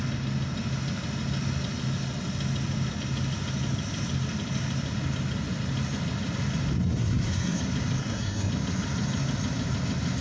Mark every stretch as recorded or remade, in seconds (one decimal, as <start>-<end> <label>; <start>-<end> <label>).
0.0-6.8 recorded; 6.8-7.6 remade; 7.6-8.0 recorded; 8.0-8.5 remade; 8.5-10.2 recorded